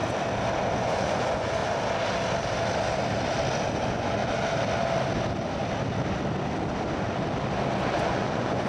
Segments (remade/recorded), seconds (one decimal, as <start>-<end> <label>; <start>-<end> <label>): 0.0-0.7 recorded; 0.7-1.6 remade; 1.6-3.8 recorded; 3.8-4.2 remade; 4.2-8.0 recorded; 8.0-8.7 remade